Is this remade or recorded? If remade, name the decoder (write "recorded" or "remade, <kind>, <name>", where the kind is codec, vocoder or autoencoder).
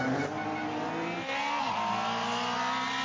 recorded